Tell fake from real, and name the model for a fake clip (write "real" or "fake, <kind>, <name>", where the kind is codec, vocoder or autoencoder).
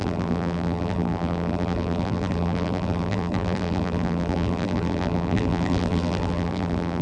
fake, vocoder, BigVGAN v2